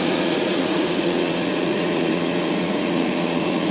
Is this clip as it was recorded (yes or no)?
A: no